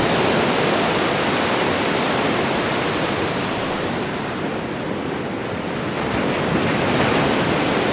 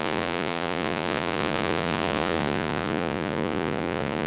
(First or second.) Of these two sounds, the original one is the first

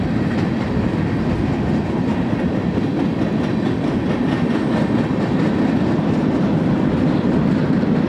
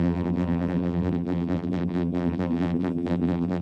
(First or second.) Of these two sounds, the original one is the first